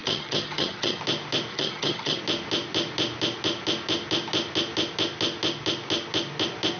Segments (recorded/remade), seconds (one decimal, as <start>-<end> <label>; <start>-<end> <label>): 0.0-1.0 remade; 1.0-1.5 recorded; 1.5-2.2 remade; 2.2-6.8 recorded